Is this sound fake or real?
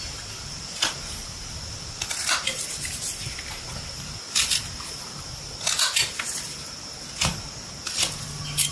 real